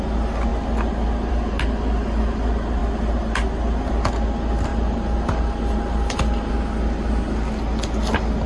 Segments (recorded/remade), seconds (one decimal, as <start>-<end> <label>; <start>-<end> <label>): 0.0-4.7 recorded; 4.7-6.5 remade; 6.5-8.5 recorded